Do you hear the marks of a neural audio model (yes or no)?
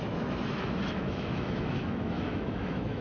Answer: yes